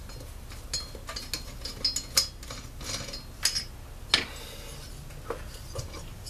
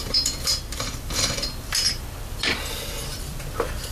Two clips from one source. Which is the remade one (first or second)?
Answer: second